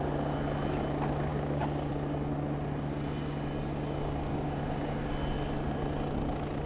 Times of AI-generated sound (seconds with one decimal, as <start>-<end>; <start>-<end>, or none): 1.3-1.9; 4.3-5.1